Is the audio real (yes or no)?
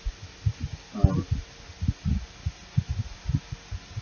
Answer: yes